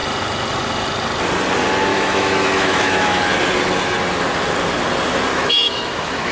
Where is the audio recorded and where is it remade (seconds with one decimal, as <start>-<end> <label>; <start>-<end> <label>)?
0.0-1.9 recorded; 1.9-3.2 remade; 3.2-5.3 recorded; 5.3-6.3 remade